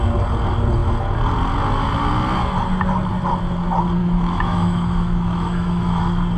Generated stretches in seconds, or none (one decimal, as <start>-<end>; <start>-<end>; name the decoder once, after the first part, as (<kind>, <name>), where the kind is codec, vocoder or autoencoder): 4.0-6.0 (autoencoder, DAC-VAE)